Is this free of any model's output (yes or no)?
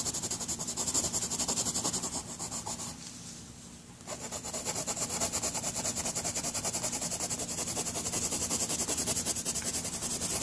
yes